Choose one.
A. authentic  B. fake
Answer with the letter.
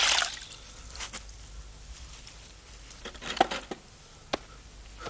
A